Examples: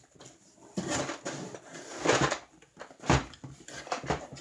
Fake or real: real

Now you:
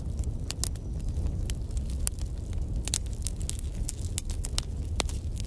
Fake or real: real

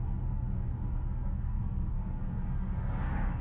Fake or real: fake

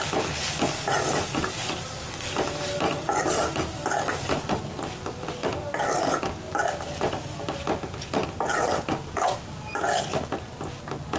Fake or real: real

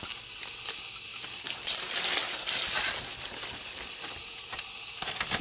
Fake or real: real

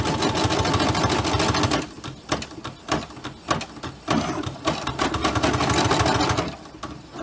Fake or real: real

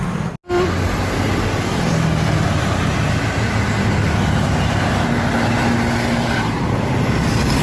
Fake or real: real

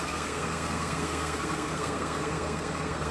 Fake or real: fake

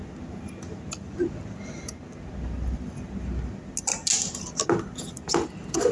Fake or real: real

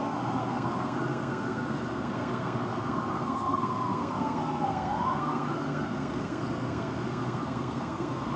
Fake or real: fake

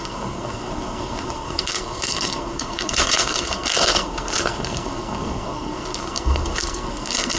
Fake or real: fake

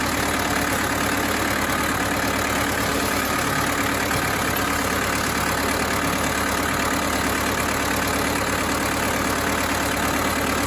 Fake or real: real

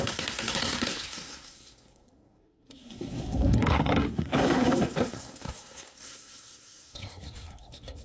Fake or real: fake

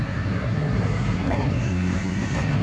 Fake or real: fake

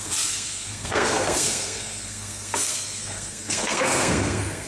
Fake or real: fake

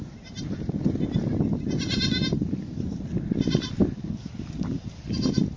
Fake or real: real